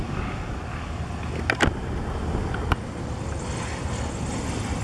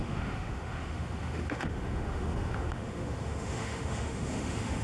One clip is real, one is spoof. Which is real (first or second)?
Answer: first